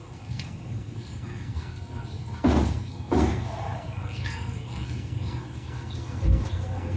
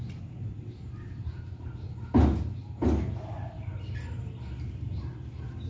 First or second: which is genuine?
second